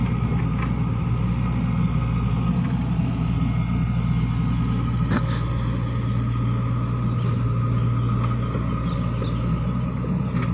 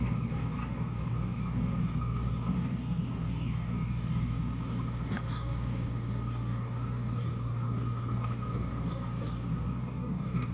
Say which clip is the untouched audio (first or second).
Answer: first